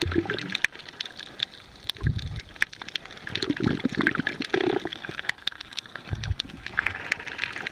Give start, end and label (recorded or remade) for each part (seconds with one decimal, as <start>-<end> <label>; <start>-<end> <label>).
0.0-4.9 recorded; 4.9-7.0 remade; 7.0-7.7 recorded